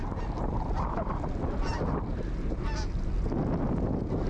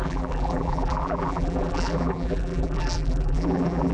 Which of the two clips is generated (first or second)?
second